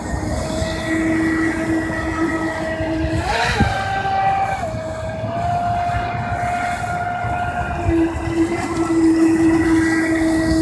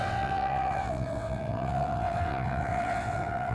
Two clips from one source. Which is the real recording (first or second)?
first